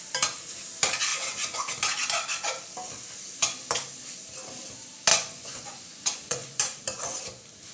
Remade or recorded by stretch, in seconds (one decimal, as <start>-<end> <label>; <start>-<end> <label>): 0.0-1.1 recorded; 1.1-1.7 remade; 1.7-5.1 recorded; 5.1-6.6 remade; 6.6-7.7 recorded